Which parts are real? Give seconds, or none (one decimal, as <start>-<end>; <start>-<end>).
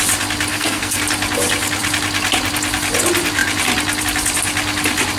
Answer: 0.0-0.5; 1.0-5.2